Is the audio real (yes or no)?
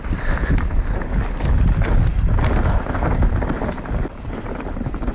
yes